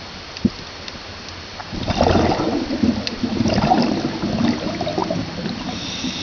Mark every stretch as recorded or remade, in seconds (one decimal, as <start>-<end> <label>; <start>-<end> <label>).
0.0-1.6 recorded; 1.6-3.7 remade; 3.7-5.0 recorded; 5.0-6.2 remade